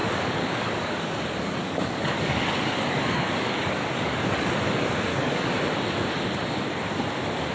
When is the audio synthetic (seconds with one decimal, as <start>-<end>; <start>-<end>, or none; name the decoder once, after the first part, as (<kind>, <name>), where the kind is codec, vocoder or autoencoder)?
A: 0.0-4.5 (codec, DAC); 5.1-5.6